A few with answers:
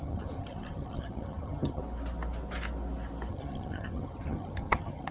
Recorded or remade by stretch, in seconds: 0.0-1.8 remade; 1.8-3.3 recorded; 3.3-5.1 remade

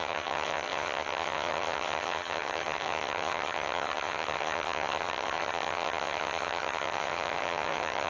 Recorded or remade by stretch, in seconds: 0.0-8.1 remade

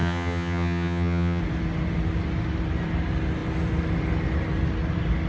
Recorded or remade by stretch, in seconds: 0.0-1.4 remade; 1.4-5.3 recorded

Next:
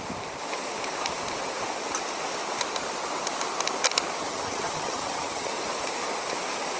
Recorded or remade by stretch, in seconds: 0.0-4.2 recorded; 4.2-5.5 remade; 5.5-6.8 recorded